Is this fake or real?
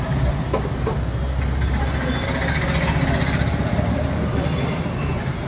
real